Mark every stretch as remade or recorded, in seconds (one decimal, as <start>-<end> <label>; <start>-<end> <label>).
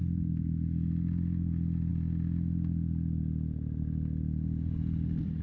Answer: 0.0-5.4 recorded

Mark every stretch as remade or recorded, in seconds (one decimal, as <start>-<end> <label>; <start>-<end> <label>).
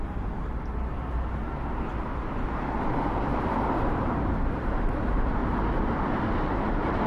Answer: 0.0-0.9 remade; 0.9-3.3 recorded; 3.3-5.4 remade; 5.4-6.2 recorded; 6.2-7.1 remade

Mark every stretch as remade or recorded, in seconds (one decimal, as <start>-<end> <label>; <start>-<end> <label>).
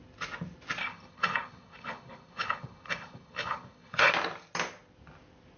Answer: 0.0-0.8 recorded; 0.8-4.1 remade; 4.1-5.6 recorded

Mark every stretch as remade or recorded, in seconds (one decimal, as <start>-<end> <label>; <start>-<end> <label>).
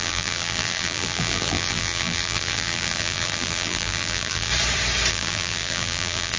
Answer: 0.0-4.5 remade; 4.5-5.1 recorded; 5.1-6.4 remade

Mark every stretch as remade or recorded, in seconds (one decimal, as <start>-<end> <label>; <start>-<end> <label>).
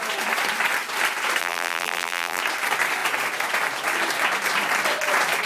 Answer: 0.0-1.4 recorded; 1.4-2.4 remade; 2.4-5.5 recorded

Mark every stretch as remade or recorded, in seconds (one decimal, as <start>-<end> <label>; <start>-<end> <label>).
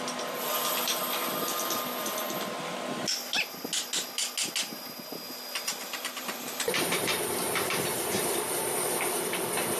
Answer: 0.0-5.7 recorded; 5.7-9.4 remade; 9.4-9.8 recorded